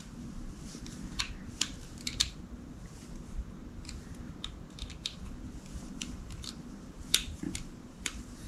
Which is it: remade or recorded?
remade